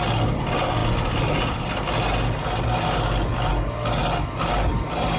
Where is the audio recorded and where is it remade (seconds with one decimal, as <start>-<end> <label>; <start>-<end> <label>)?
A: 0.0-5.2 recorded